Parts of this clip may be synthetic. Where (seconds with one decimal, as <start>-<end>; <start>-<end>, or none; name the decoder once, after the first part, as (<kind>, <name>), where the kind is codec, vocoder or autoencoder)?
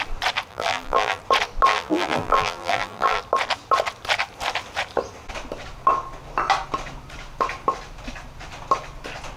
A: 0.5-1.2 (vocoder, BigVGAN v2); 1.7-3.2